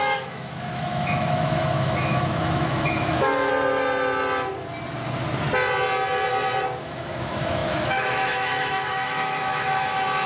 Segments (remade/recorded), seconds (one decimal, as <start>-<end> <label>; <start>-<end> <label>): 0.0-3.5 remade; 3.5-6.8 recorded; 6.8-10.3 remade